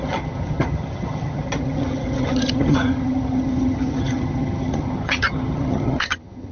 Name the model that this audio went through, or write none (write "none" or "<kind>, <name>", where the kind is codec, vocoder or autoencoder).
vocoder, HiFi-GAN